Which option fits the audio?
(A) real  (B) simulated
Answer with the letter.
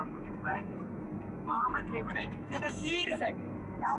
B